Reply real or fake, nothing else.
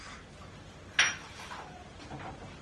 real